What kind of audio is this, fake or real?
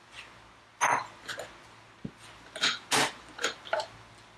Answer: real